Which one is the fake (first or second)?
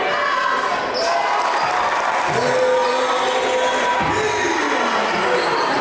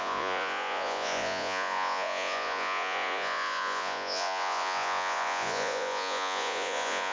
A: second